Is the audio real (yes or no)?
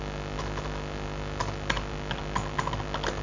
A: yes